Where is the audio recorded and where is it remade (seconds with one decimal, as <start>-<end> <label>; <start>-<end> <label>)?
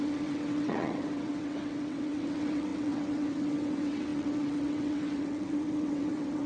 0.0-6.5 remade